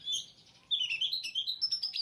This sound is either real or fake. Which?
real